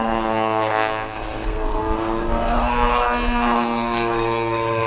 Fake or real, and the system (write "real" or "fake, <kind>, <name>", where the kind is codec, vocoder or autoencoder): fake, codec, SNAC